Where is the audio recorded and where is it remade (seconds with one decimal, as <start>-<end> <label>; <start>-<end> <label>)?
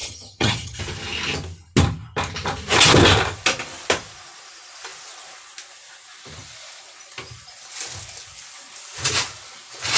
0.0-0.8 remade; 0.8-10.0 recorded